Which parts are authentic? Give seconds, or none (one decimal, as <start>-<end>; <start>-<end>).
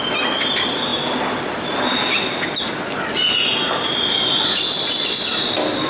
0.0-5.3